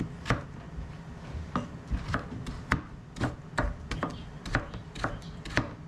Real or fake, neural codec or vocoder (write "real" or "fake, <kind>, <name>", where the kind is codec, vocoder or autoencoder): real